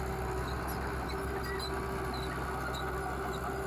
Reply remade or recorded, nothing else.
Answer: recorded